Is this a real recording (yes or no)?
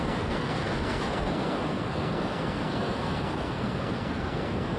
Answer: no